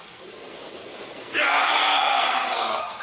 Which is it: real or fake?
fake